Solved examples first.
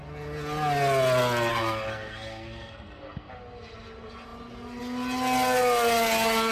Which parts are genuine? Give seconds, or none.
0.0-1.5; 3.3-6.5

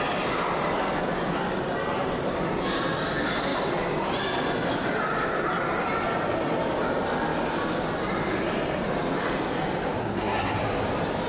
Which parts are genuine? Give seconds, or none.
0.0-10.0; 10.6-11.3